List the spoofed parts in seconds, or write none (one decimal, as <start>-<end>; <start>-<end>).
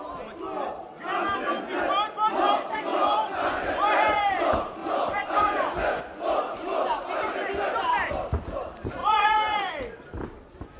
2.9-4.2; 4.8-6.0; 9.0-9.7